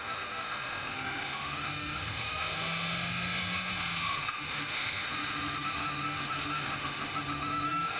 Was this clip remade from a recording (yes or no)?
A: yes